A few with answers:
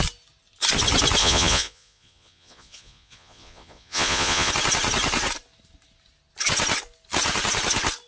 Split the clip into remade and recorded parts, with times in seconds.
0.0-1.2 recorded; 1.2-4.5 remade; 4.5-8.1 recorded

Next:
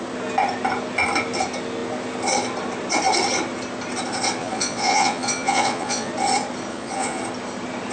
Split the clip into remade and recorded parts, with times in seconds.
0.0-4.4 recorded; 4.4-6.1 remade; 6.1-6.7 recorded; 6.7-7.2 remade; 7.2-7.9 recorded

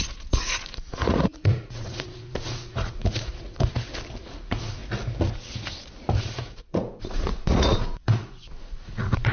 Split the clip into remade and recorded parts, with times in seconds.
0.0-3.7 remade; 3.7-4.2 recorded; 4.2-4.8 remade; 4.8-6.2 recorded; 6.2-9.3 remade

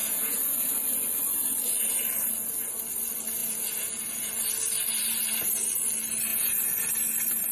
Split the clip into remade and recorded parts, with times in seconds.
0.0-0.7 remade; 0.7-3.4 recorded; 3.4-4.3 remade; 4.3-6.3 recorded; 6.3-6.9 remade; 6.9-7.5 recorded

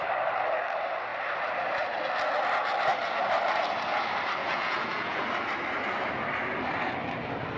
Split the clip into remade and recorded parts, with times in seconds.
0.0-4.4 recorded; 4.4-5.2 remade; 5.2-7.6 recorded

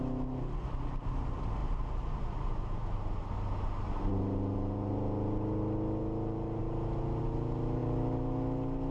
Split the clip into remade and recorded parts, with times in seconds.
0.0-8.9 recorded

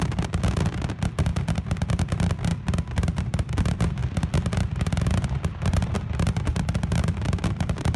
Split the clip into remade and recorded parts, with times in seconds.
0.0-8.0 recorded

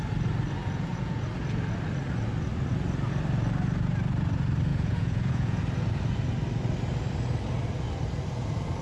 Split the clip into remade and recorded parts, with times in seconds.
0.0-0.6 recorded; 0.6-1.2 remade; 1.2-4.7 recorded; 4.7-5.6 remade; 5.6-8.8 recorded